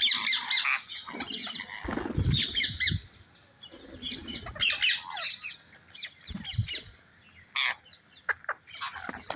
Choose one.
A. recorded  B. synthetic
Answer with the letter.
A